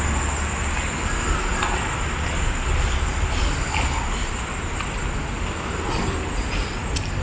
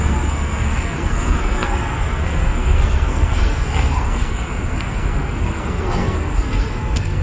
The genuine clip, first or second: first